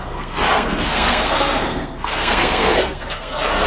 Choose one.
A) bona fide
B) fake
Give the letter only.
B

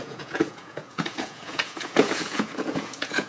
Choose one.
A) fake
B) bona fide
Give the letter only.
A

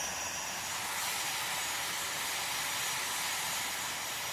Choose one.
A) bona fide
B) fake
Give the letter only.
A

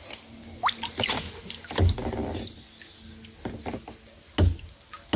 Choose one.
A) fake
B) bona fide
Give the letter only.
B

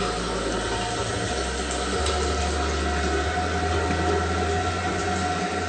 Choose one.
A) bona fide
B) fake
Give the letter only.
A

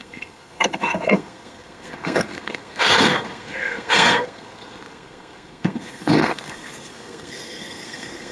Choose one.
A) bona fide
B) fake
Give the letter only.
B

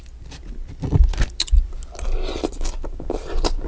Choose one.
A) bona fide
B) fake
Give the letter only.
A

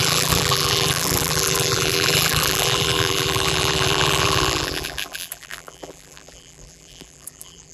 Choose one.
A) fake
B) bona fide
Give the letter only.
A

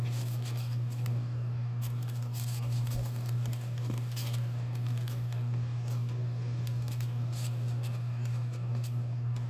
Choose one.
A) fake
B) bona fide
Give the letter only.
A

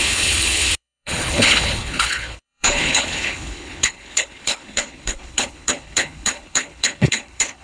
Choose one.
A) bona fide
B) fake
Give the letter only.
B